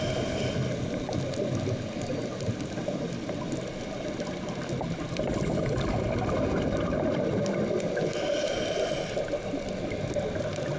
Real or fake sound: real